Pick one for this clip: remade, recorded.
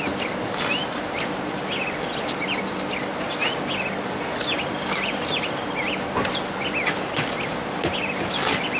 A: recorded